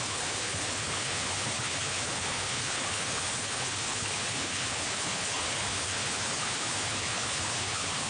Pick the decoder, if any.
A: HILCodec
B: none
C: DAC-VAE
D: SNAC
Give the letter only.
A